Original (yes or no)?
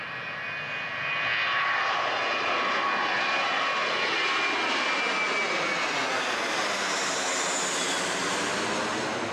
yes